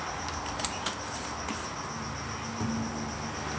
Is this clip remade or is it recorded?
recorded